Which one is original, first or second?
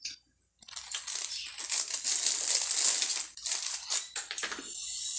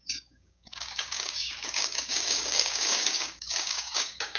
first